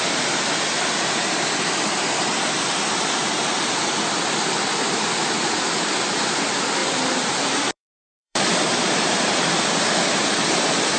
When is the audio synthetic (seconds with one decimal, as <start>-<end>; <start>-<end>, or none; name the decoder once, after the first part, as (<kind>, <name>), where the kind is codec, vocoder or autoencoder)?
6.8-9.6 (vocoder, BigVGAN v2)